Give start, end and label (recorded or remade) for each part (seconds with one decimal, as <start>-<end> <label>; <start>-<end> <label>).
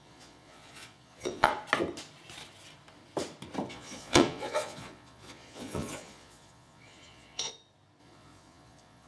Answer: 0.0-1.5 remade; 1.5-3.7 recorded; 3.7-7.5 remade; 7.5-8.0 recorded; 8.0-9.1 remade